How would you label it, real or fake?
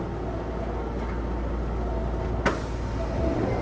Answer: real